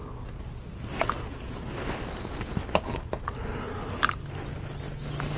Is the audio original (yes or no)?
yes